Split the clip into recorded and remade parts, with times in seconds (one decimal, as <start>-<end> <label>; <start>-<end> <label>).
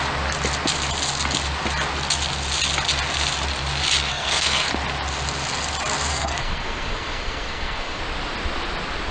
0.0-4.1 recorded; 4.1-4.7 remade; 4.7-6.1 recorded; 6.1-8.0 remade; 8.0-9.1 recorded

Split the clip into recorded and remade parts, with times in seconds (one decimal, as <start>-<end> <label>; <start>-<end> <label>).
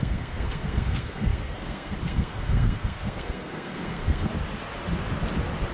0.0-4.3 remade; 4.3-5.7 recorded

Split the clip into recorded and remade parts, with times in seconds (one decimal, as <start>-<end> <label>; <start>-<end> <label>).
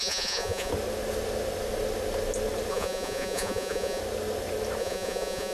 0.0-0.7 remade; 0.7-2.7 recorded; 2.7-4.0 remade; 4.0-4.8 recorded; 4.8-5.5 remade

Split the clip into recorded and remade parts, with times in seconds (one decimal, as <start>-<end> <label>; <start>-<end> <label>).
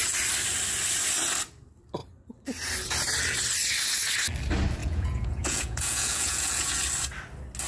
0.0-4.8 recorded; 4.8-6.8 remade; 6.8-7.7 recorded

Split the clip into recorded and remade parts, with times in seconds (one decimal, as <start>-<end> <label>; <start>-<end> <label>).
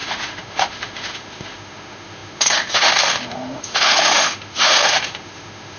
0.0-5.8 remade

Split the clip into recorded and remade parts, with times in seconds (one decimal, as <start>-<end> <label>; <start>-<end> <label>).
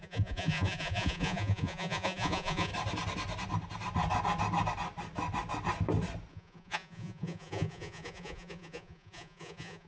0.0-2.7 remade; 2.7-6.3 recorded; 6.3-9.9 remade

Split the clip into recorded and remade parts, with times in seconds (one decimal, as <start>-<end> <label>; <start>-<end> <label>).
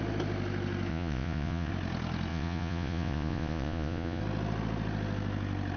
0.0-0.9 recorded; 0.9-1.7 remade; 1.7-2.3 recorded; 2.3-4.2 remade; 4.2-5.8 recorded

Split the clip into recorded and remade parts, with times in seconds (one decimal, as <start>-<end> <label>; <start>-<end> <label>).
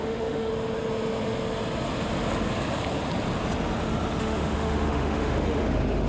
0.0-0.5 remade; 0.5-4.2 recorded; 4.2-6.1 remade